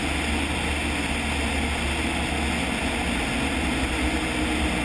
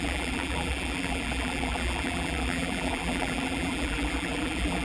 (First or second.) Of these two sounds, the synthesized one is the second